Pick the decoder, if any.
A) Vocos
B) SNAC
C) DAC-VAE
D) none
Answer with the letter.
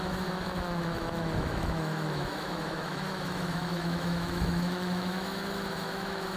C